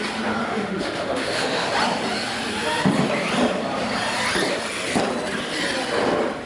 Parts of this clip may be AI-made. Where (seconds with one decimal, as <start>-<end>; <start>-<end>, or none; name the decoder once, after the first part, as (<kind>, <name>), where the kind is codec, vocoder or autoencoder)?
0.4-1.7 (autoencoder, DAC-VAE)